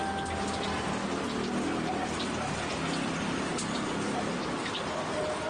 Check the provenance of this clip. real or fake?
real